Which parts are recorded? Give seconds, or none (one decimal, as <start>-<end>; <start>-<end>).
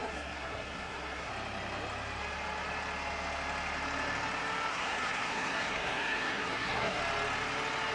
1.3-4.7; 7.0-7.9